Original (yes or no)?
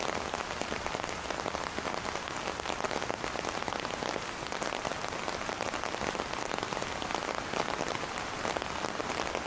yes